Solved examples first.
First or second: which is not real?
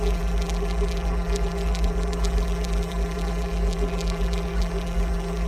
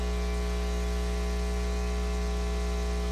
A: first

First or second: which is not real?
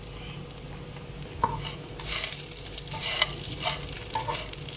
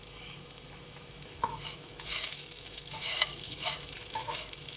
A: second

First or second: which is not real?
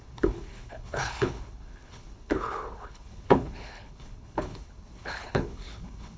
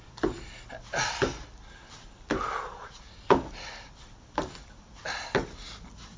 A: first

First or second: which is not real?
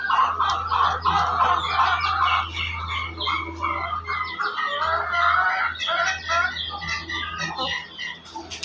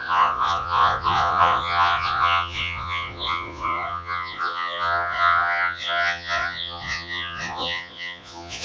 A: second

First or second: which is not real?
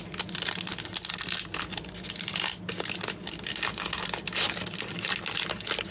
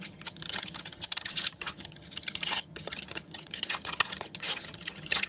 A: second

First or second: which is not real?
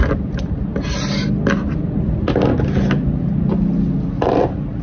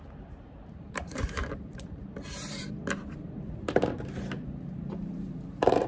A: second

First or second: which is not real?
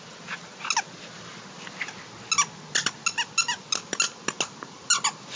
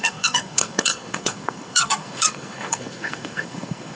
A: second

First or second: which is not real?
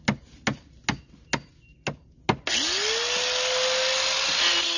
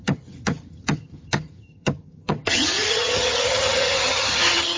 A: second